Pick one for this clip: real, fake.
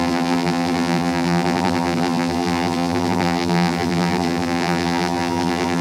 fake